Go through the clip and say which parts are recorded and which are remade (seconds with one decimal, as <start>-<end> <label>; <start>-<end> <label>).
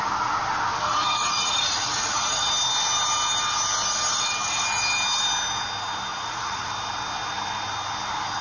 0.0-0.9 recorded; 0.9-2.4 remade; 2.4-6.1 recorded; 6.1-6.7 remade; 6.7-8.4 recorded